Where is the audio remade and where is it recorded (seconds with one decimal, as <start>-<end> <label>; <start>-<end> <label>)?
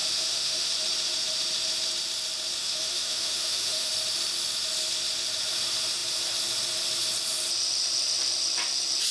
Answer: 0.0-0.7 remade; 0.7-2.6 recorded; 2.6-3.9 remade; 3.9-9.1 recorded